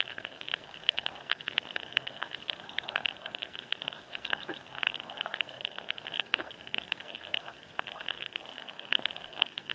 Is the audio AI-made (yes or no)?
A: yes